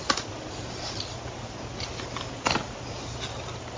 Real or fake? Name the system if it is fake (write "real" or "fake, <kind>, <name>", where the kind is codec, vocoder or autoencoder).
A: real